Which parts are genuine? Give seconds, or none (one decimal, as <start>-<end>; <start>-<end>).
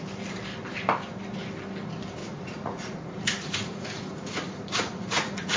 0.0-2.2